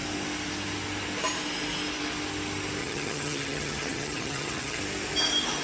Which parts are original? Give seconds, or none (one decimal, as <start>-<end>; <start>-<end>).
0.0-2.8; 4.8-5.6